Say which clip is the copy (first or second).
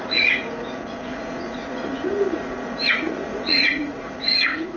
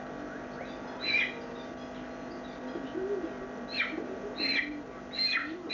first